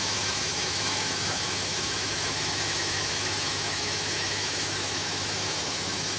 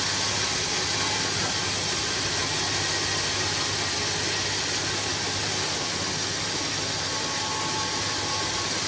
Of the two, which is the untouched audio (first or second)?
second